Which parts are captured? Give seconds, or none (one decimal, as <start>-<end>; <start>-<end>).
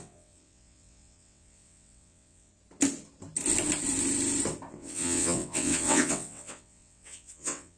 2.5-4.7